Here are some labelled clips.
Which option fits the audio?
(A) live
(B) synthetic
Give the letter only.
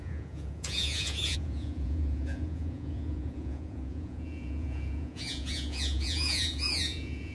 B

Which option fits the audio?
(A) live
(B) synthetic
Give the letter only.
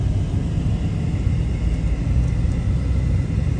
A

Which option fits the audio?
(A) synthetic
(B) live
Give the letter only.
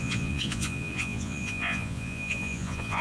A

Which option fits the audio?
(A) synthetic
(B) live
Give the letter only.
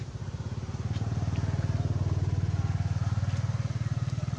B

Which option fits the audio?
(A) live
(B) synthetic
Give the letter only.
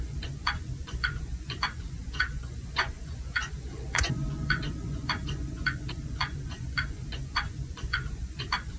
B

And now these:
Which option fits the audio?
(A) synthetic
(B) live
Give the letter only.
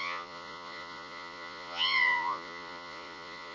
A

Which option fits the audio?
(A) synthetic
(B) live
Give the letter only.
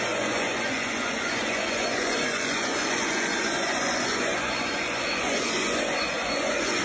A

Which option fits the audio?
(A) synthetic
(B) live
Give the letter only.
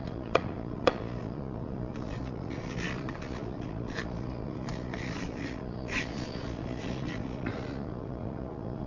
A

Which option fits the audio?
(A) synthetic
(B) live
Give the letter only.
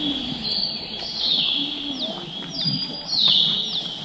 B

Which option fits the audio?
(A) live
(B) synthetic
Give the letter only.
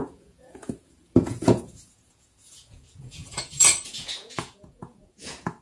B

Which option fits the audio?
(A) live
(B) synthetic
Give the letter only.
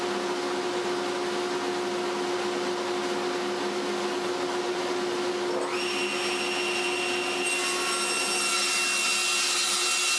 A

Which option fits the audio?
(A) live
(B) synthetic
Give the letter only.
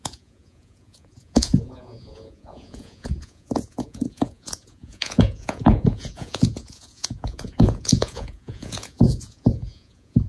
B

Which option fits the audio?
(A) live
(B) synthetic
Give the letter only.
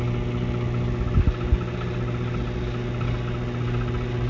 A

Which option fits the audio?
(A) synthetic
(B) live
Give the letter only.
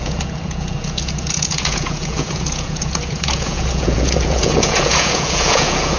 A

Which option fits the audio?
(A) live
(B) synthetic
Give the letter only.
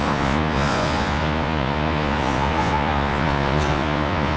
B